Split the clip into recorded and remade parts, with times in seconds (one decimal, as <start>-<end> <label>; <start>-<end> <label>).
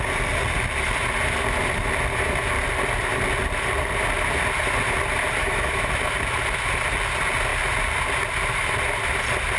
0.0-5.4 recorded; 5.4-5.9 remade; 5.9-9.6 recorded